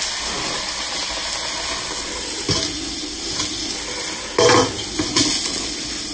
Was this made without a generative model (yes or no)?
yes